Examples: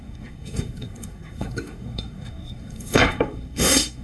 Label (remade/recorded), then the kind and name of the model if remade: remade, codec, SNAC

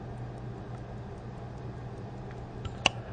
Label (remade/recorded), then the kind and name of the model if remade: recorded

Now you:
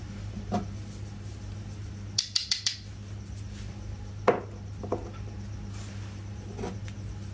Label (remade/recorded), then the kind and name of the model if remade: recorded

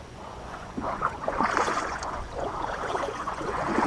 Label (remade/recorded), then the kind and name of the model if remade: remade, vocoder, Vocos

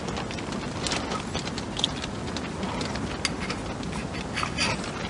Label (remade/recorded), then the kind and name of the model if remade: recorded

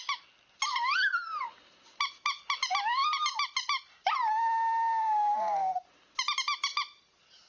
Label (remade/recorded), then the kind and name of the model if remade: recorded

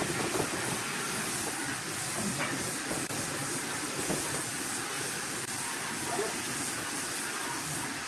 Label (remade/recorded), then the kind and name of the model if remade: recorded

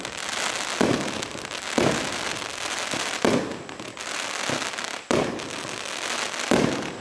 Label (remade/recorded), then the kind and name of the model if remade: recorded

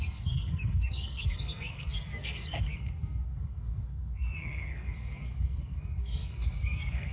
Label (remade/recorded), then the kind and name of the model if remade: remade, codec, SNAC